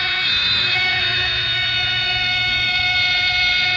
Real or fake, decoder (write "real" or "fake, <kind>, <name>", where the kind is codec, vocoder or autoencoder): fake, autoencoder, DAC-VAE